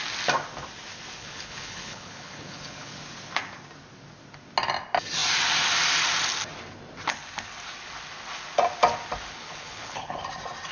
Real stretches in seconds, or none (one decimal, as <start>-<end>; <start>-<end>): 0.0-1.2; 3.0-9.4; 10.2-10.7